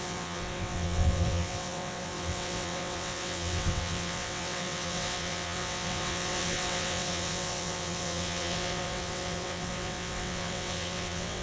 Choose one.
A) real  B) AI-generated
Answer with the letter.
B